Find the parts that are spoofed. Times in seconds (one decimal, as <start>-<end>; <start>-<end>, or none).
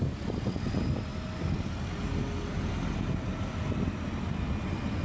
none